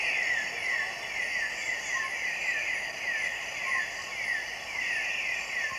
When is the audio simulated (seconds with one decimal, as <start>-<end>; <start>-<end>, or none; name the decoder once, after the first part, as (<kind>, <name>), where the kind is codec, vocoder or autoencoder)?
none